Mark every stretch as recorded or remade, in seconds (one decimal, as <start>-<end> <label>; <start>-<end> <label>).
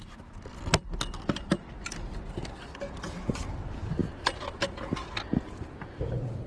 0.0-6.5 recorded